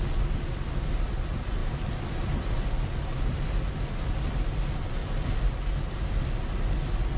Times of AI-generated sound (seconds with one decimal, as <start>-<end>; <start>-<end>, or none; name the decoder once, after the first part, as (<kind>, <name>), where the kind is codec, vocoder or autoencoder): none